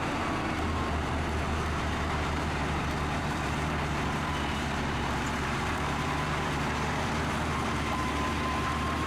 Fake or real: fake